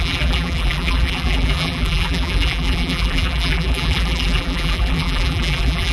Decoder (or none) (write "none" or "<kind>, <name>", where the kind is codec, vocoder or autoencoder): vocoder, BigVGAN v2